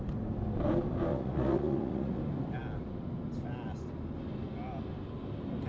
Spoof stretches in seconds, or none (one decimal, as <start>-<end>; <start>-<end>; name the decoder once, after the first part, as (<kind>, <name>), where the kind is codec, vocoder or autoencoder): 1.1-2.2 (vocoder, Vocos)